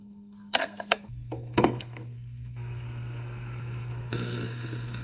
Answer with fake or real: fake